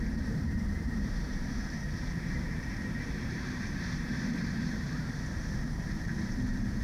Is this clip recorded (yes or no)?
no